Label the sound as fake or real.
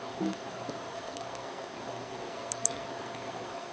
fake